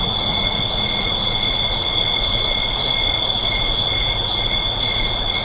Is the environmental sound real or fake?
fake